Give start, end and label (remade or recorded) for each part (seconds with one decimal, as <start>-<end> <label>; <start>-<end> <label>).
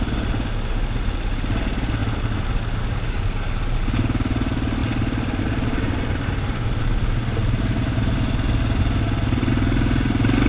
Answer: 0.0-10.5 recorded